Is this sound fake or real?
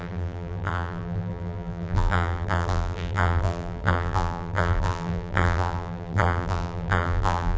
fake